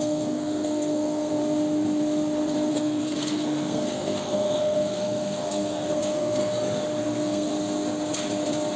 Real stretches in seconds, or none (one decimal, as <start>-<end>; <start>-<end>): 1.4-2.7; 6.4-7.0; 7.5-8.8

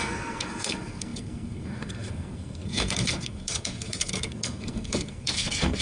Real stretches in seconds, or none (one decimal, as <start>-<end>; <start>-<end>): none

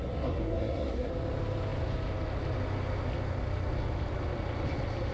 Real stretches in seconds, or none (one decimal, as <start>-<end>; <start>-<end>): 1.1-5.1

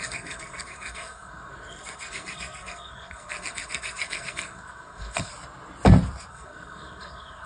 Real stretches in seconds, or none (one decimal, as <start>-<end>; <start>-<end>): 5.3-6.3

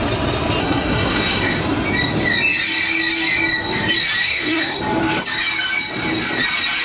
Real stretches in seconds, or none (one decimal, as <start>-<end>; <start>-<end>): 0.0-0.6; 1.6-4.2; 4.8-6.8

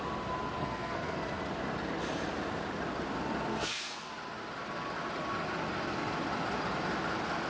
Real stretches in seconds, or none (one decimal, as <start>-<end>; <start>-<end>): 0.0-0.6; 1.4-3.5; 4.1-7.5

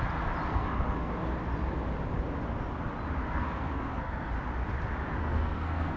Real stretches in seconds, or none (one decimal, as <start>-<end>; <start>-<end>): 0.0-0.5; 1.1-3.2; 4.3-5.2

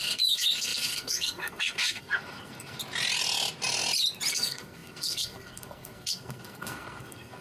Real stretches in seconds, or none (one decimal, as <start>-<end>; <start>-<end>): 2.8-4.3